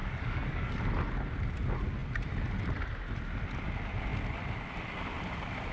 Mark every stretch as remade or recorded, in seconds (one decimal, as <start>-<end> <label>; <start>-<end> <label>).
0.0-0.8 remade; 0.8-5.7 recorded